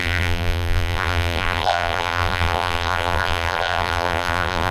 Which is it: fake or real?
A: fake